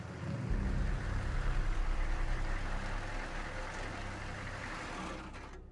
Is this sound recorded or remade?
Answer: recorded